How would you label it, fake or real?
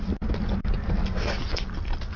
real